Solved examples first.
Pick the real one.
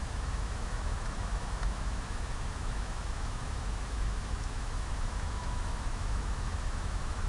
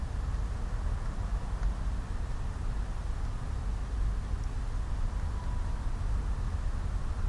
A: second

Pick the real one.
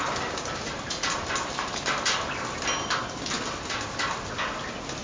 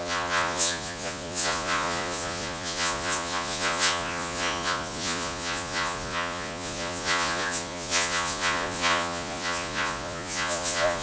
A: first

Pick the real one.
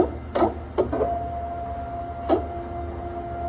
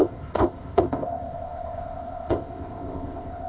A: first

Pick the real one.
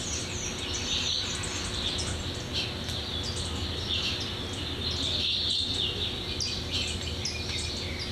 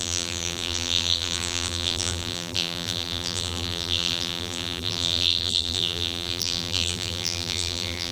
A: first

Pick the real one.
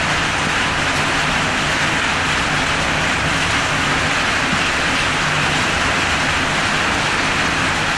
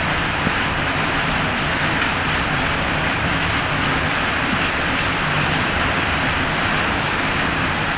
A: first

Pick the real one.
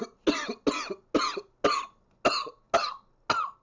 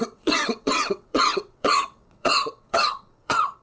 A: first